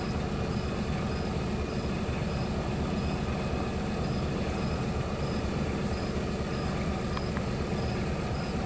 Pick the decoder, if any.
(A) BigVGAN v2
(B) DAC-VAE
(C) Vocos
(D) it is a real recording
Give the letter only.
D